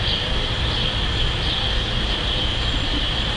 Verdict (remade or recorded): recorded